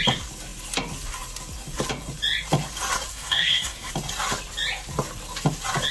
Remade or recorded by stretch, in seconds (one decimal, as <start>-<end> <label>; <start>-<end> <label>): 0.0-3.1 recorded; 3.1-3.9 remade; 3.9-5.9 recorded